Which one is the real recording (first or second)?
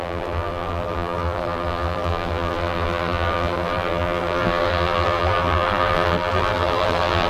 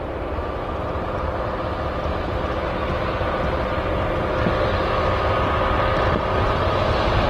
second